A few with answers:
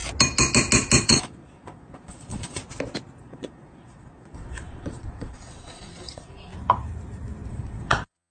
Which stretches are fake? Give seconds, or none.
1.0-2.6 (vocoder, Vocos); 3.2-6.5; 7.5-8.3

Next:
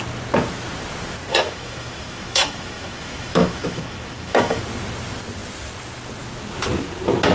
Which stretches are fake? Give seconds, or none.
1.3-4.6 (autoencoder, DAC-VAE)

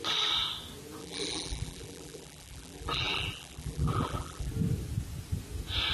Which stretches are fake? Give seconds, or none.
1.0-4.5 (vocoder, BigVGAN v2)